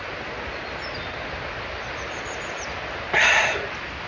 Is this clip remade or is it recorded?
recorded